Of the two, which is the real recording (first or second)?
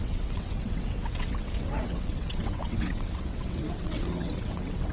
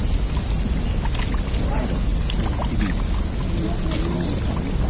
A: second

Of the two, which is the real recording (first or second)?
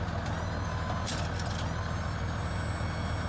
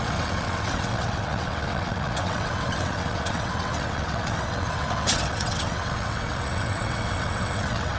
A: first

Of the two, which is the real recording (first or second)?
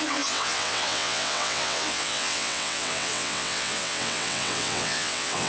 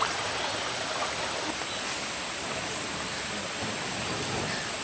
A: second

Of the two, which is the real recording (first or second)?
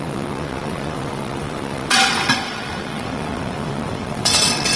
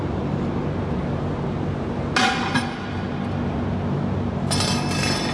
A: second